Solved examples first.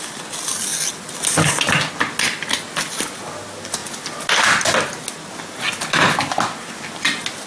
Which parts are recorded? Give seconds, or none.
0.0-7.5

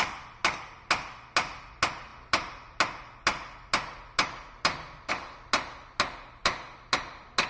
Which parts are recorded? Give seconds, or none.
0.0-7.5

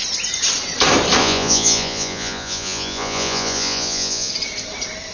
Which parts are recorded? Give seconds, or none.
0.0-1.2; 4.3-5.1